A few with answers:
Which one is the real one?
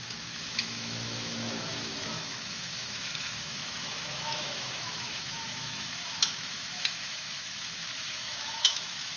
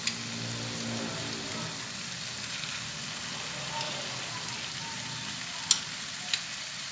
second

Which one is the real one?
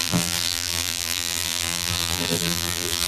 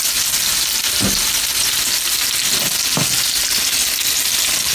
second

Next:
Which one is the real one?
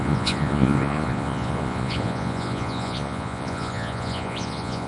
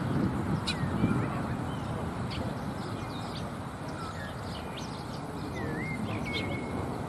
second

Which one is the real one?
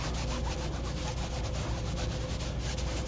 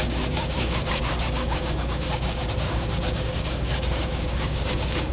first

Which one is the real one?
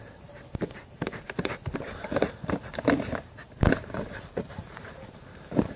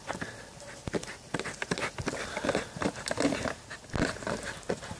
second